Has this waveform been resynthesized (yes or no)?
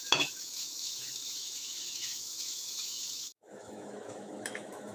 yes